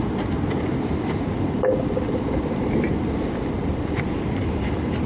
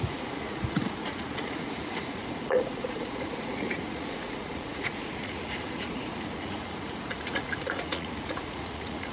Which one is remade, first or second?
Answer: second